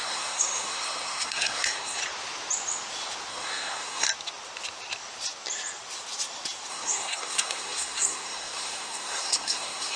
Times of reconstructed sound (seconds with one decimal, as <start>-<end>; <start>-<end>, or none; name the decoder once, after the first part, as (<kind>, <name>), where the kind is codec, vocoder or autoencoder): 0.0-2.0 (codec, SNAC); 3.3-4.1; 6.7-10.0